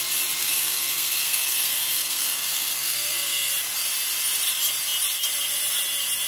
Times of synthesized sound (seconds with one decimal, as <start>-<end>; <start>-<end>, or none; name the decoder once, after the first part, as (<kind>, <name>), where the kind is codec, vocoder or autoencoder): 0.4-3.5 (codec, SNAC)